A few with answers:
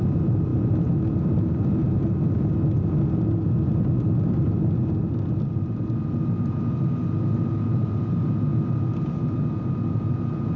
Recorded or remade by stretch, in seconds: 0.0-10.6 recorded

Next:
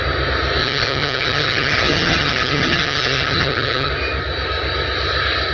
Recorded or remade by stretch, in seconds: 0.0-0.6 recorded; 0.6-3.9 remade; 3.9-5.5 recorded